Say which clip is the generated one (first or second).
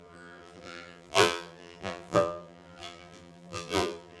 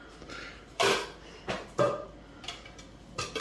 first